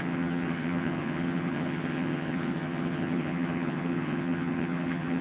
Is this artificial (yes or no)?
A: yes